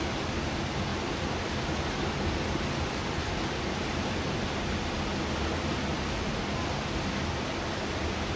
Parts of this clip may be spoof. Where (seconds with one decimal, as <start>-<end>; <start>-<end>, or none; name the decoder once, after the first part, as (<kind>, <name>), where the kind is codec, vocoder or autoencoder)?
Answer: none